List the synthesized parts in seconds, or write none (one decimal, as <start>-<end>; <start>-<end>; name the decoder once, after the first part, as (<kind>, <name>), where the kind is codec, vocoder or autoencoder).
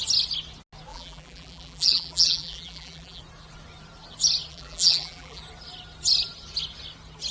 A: 0.9-3.2 (vocoder, BigVGAN v2); 4.5-5.4